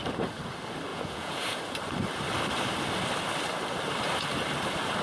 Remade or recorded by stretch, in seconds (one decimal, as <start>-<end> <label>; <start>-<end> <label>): 0.0-0.9 recorded; 0.9-1.6 remade; 1.6-5.0 recorded